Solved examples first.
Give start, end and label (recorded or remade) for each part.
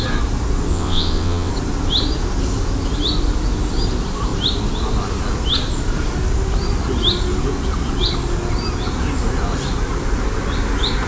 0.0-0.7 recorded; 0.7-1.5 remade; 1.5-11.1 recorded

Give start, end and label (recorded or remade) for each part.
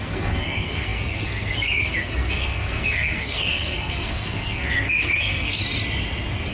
0.0-5.6 remade; 5.6-6.5 recorded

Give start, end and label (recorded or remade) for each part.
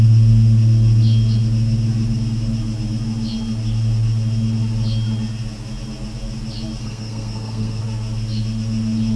0.0-6.8 recorded; 6.8-7.8 remade; 7.8-9.2 recorded